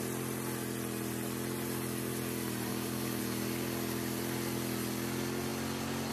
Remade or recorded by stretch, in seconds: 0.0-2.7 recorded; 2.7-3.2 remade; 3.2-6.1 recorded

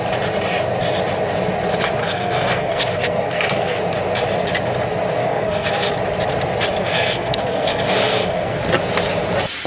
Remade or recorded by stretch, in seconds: 0.0-2.0 recorded; 2.0-3.8 remade; 3.8-5.2 recorded; 5.2-5.9 remade; 5.9-6.8 recorded; 6.8-8.6 remade; 8.6-9.7 recorded

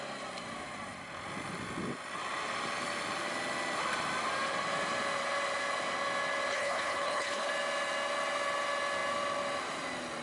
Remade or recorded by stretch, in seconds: 0.0-6.5 recorded; 6.5-7.5 remade; 7.5-10.2 recorded

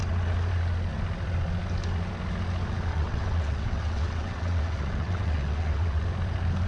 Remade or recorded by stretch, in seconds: 0.0-2.9 recorded; 2.9-6.0 remade; 6.0-6.7 recorded

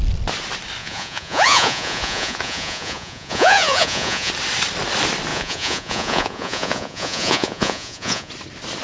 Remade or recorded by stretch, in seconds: 0.0-0.8 recorded; 0.8-4.3 remade; 4.3-5.3 recorded; 5.3-8.3 remade; 8.3-8.8 recorded

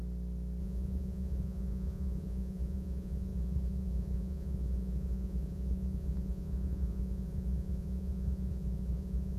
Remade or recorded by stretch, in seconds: 0.0-0.6 recorded; 0.6-9.4 remade